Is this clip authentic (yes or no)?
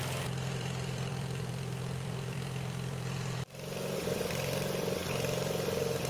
no